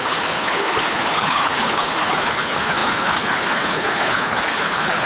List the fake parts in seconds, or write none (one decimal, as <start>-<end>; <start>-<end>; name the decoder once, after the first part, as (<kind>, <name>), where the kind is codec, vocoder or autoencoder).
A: 0.0-5.1 (codec, HILCodec)